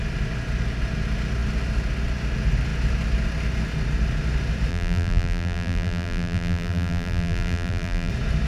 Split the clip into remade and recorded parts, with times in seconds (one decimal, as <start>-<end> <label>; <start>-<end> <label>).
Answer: 0.0-4.7 recorded; 4.7-8.1 remade; 8.1-8.5 recorded